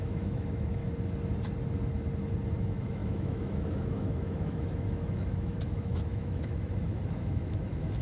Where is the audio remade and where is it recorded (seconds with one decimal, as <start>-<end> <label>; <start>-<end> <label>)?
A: 0.0-0.8 remade; 0.8-2.6 recorded; 2.6-8.0 remade